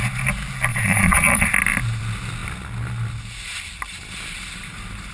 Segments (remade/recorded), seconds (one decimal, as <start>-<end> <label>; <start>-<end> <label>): 0.0-0.7 recorded; 0.7-1.5 remade; 1.5-5.1 recorded